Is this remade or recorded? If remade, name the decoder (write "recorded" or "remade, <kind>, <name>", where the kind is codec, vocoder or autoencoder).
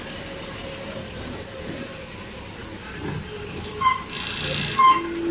recorded